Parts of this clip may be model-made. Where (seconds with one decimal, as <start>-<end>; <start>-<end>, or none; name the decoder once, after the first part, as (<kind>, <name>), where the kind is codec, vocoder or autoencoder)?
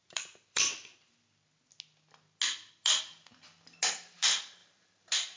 0.0-0.7 (vocoder, BigVGAN v2); 3.9-5.4